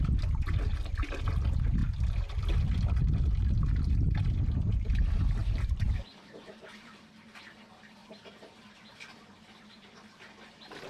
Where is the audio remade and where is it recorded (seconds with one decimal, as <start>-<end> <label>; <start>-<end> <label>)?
0.0-5.4 recorded; 5.4-7.4 remade; 7.4-8.0 recorded; 8.0-8.6 remade; 8.6-10.9 recorded